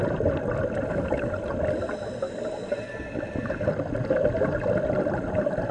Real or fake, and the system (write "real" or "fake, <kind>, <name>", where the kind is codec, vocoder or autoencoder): real